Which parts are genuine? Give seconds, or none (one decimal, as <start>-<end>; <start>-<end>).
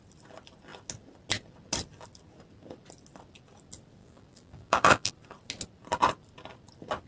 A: 0.0-4.0; 5.1-7.1